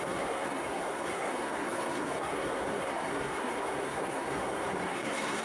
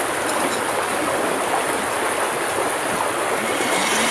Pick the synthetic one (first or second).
first